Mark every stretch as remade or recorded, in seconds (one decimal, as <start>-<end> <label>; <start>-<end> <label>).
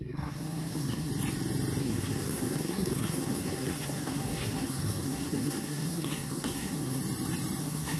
0.0-1.1 remade; 1.1-1.8 recorded; 1.8-7.0 remade; 7.0-7.6 recorded; 7.6-8.0 remade